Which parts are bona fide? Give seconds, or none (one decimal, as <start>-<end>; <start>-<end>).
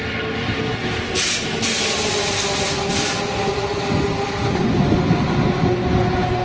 0.0-6.4